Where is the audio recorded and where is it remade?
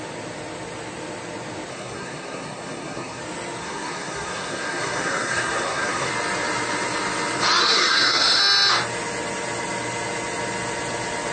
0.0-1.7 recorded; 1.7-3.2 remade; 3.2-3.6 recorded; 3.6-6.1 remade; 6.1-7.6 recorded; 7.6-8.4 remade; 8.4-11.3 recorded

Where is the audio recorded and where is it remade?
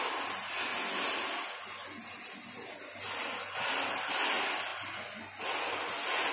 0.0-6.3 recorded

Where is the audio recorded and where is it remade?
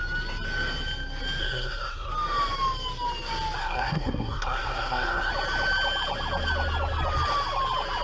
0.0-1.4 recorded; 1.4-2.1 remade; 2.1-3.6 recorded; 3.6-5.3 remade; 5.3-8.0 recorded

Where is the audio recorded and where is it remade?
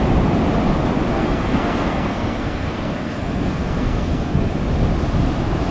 0.0-1.1 recorded; 1.1-4.5 remade; 4.5-5.7 recorded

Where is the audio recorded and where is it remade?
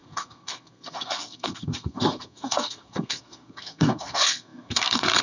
0.0-5.2 remade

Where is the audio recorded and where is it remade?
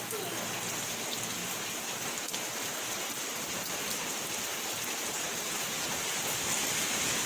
0.0-1.4 recorded; 1.4-5.8 remade; 5.8-7.3 recorded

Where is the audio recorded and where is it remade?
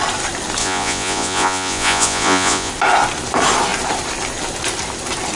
0.0-0.6 recorded; 0.6-2.7 remade; 2.7-5.4 recorded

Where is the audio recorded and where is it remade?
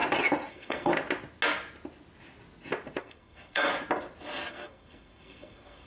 0.0-0.5 recorded; 0.5-0.9 remade; 0.9-3.0 recorded; 3.0-3.7 remade; 3.7-4.5 recorded; 4.5-5.9 remade